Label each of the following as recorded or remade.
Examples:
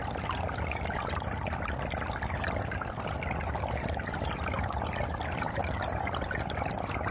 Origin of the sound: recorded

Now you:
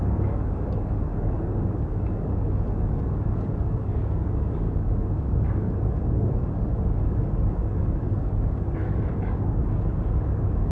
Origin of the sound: remade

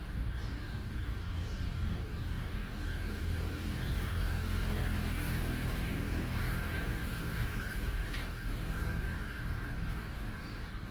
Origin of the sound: remade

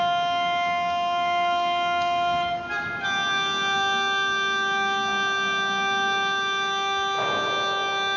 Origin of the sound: recorded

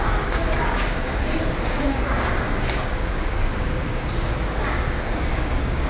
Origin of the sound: remade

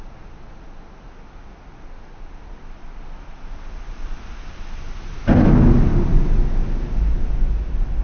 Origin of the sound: recorded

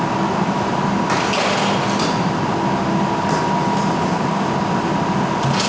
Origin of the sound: recorded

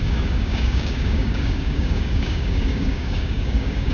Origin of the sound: remade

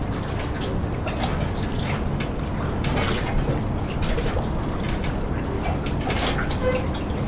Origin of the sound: recorded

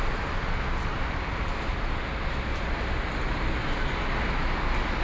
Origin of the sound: recorded